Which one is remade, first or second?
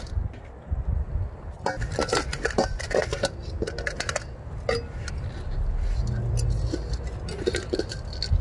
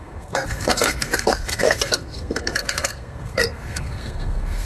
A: second